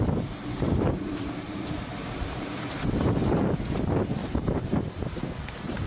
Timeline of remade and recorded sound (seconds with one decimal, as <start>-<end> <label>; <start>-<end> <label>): 0.0-0.4 recorded; 0.4-2.8 remade; 2.8-4.2 recorded; 4.2-4.8 remade; 4.8-5.9 recorded